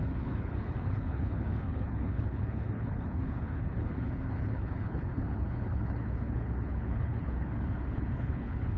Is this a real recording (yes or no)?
no